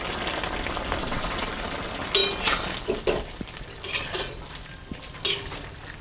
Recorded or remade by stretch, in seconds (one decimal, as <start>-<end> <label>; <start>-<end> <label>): 0.0-1.0 recorded; 1.0-1.5 remade; 1.5-6.0 recorded